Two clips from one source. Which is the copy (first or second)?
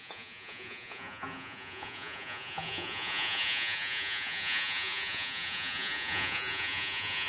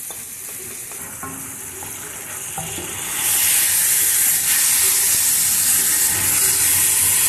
first